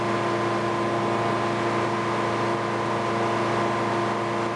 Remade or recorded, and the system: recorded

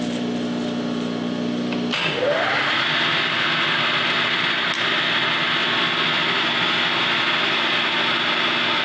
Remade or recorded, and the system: recorded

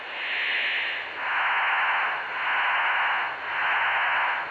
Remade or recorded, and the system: recorded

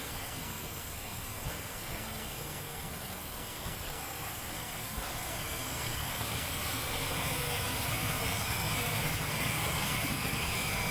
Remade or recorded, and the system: remade, codec, SNAC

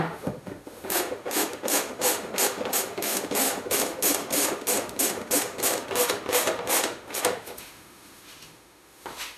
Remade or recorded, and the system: remade, autoencoder, DAC-VAE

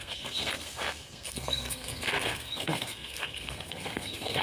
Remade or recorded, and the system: remade, codec, SNAC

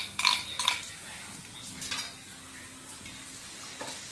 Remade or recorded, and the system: recorded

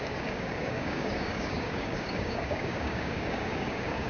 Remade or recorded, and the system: remade, codec, DAC